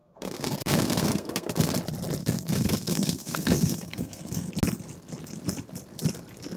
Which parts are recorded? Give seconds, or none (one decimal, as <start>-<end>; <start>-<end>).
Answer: 1.7-2.2; 4.5-6.6

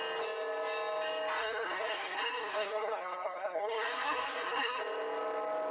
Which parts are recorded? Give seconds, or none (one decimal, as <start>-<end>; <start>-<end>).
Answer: 0.0-1.4; 4.8-5.7

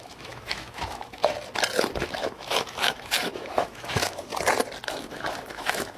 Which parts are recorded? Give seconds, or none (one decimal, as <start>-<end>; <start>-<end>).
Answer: 1.2-2.0; 4.3-4.9

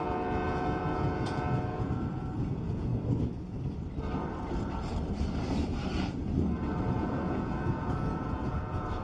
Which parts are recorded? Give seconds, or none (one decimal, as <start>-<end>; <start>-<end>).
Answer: 2.9-6.9

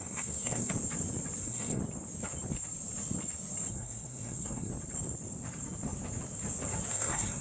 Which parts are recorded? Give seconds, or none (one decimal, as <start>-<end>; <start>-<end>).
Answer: 0.7-1.4; 1.8-3.7; 4.7-6.9